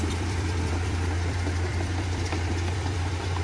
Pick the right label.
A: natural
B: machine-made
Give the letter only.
B